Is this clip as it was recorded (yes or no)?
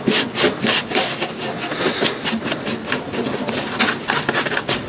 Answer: yes